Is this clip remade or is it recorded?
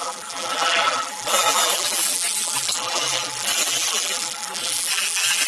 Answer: remade